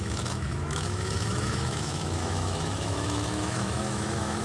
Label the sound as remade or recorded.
remade